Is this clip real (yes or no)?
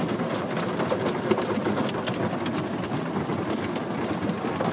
yes